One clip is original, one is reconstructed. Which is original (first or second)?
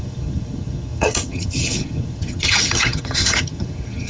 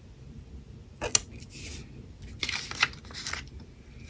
second